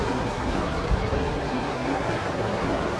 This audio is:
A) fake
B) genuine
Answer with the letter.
A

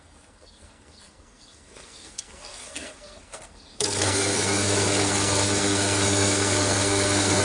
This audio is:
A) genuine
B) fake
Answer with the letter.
B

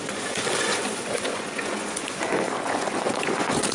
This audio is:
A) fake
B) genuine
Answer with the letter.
A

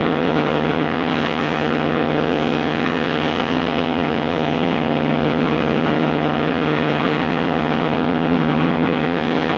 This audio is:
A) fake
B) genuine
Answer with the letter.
A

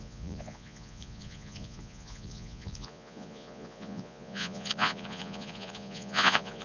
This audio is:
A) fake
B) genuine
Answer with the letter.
A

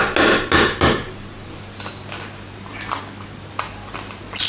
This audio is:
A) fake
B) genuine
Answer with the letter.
B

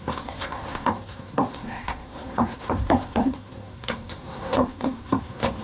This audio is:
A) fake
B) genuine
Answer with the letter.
A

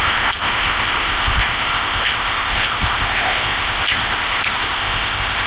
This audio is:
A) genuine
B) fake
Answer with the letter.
B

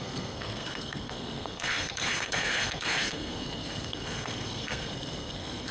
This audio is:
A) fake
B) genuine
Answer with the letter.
A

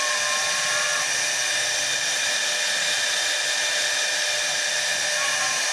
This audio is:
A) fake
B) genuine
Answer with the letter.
B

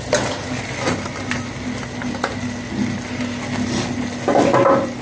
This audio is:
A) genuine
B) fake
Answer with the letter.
A